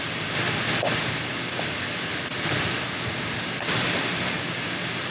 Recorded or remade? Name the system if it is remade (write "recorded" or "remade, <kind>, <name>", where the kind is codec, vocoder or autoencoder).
remade, vocoder, BigVGAN v2